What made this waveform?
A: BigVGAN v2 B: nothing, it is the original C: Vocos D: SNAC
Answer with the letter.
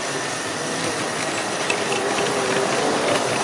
B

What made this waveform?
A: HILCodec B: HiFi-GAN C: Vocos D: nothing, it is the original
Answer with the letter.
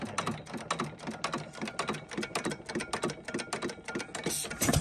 D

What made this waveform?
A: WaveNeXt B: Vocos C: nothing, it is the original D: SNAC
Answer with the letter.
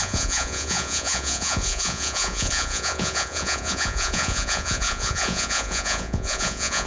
B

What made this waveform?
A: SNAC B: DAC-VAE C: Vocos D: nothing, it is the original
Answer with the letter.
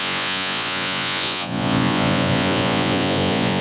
C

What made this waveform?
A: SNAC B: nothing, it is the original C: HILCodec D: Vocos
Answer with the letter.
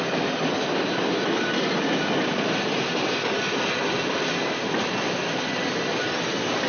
B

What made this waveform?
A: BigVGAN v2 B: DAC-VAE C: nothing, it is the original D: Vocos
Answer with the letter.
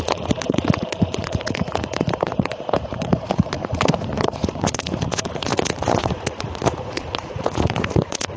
D